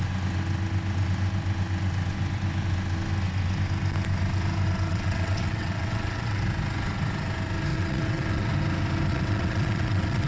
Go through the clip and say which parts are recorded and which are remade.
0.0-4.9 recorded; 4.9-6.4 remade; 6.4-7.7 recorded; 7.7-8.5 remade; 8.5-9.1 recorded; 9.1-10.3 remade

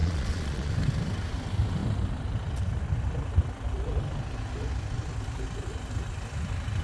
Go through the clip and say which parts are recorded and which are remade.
0.0-0.7 remade; 0.7-6.8 recorded

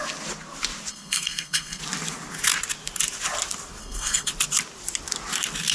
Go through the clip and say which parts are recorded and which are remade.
0.0-0.9 recorded; 0.9-1.8 remade; 1.8-3.8 recorded; 3.8-4.3 remade; 4.3-5.7 recorded

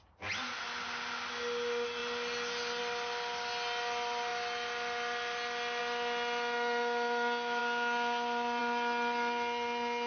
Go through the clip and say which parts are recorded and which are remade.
0.0-10.1 recorded